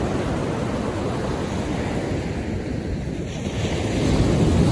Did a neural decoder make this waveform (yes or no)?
no